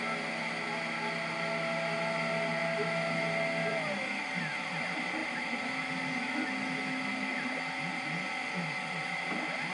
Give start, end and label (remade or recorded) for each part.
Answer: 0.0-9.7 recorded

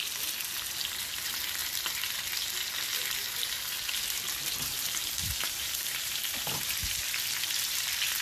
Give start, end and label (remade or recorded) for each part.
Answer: 0.0-5.2 recorded; 5.2-7.0 remade; 7.0-8.2 recorded

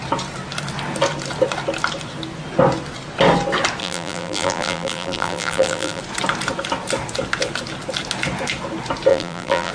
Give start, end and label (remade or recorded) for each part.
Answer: 0.0-3.8 recorded; 3.8-6.0 remade; 6.0-9.1 recorded; 9.1-9.7 remade

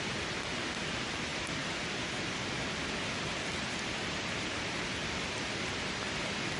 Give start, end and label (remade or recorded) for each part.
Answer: 0.0-1.3 remade; 1.3-4.0 recorded; 4.0-6.6 remade

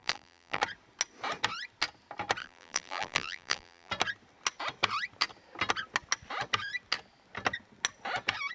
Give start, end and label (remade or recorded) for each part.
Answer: 0.0-0.6 remade; 0.6-2.4 recorded; 2.4-3.9 remade; 3.9-8.5 recorded

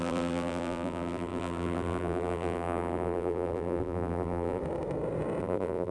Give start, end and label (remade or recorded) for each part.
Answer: 0.0-4.6 remade; 4.6-5.4 recorded; 5.4-5.9 remade

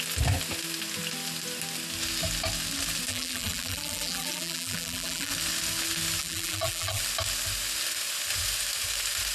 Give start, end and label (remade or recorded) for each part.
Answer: 0.0-3.1 recorded; 3.1-5.3 remade; 5.3-6.2 recorded; 6.2-7.0 remade; 7.0-9.3 recorded